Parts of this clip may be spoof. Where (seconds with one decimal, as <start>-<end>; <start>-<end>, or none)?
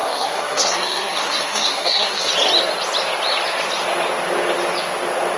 0.0-2.3